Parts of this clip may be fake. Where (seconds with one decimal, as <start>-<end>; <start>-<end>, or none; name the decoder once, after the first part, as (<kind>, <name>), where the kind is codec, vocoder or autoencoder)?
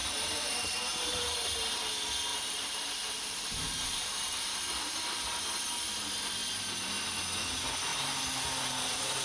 0.0-1.7 (vocoder, BigVGAN v2); 2.3-4.7; 7.9-9.2